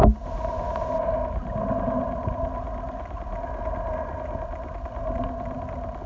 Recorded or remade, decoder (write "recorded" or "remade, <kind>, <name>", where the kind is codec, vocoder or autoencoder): recorded